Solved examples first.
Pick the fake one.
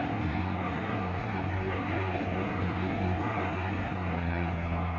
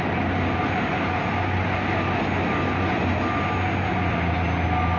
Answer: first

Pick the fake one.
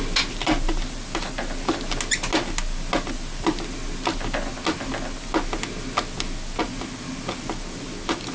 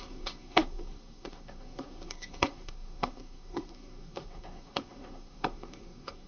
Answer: second